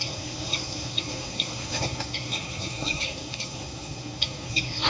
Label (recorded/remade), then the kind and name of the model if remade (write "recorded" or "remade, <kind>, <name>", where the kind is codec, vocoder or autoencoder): remade, codec, SNAC